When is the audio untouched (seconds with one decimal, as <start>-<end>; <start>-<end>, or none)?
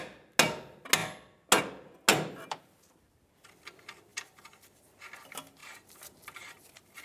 0.0-2.1; 2.6-4.1; 5.0-5.6